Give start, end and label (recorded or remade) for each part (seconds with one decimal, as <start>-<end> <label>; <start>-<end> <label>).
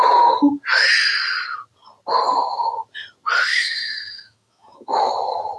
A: 0.0-3.5 recorded; 3.5-5.1 remade; 5.1-5.6 recorded